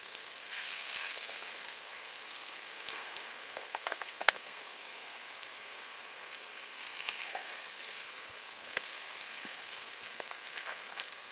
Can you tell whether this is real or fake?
fake